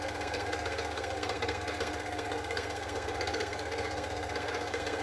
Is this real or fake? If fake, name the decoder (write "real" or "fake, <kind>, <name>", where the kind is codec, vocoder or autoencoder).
fake, codec, SNAC